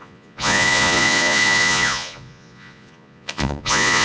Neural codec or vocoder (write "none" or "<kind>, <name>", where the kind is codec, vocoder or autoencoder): vocoder, Vocos